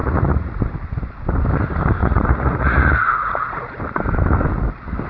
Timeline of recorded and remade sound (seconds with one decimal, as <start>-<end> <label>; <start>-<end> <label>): 0.0-0.6 remade; 0.6-2.0 recorded; 2.0-3.7 remade; 3.7-5.1 recorded